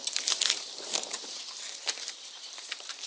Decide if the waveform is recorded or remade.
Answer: remade